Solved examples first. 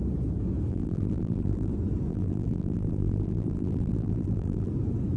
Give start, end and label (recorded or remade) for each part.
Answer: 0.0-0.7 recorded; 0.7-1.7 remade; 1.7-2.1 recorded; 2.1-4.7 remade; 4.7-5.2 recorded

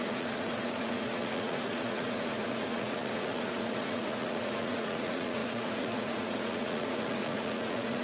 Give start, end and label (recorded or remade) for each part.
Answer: 0.0-8.0 remade

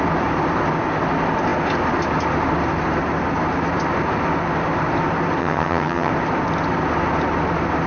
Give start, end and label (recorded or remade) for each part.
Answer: 0.0-5.4 recorded; 5.4-6.1 remade; 6.1-7.9 recorded

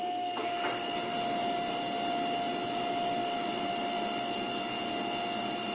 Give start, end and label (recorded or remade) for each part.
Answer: 0.0-5.7 recorded

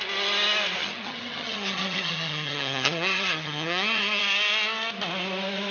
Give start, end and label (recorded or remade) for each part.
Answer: 0.0-0.8 recorded; 0.8-4.2 remade; 4.2-5.7 recorded

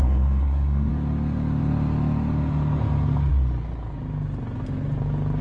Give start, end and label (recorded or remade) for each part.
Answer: 0.0-0.9 remade; 0.9-5.4 recorded

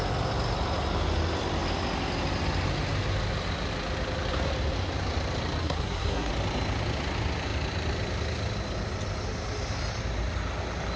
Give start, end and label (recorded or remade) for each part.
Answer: 0.0-5.6 recorded; 5.6-6.3 remade; 6.3-11.0 recorded